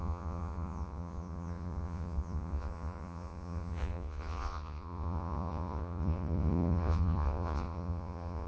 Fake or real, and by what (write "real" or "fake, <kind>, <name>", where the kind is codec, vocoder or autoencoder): fake, vocoder, Vocos